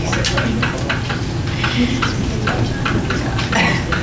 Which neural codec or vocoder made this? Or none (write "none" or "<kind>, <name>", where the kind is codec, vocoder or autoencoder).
none